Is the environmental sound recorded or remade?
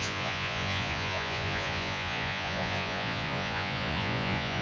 remade